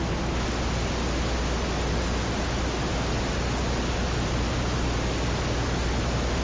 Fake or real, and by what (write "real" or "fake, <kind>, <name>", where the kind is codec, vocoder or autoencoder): real